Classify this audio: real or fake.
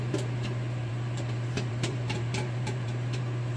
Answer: fake